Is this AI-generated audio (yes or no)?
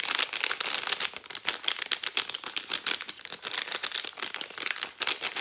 no